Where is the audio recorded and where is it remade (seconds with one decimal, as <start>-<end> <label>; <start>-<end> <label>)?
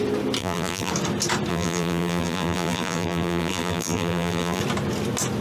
0.0-0.4 recorded; 0.4-0.9 remade; 0.9-1.5 recorded; 1.5-4.6 remade; 4.6-5.4 recorded